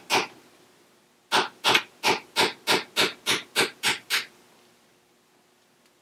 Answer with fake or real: real